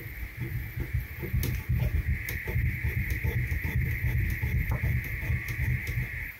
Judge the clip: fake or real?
real